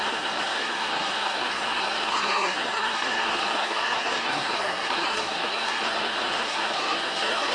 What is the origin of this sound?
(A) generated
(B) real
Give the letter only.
A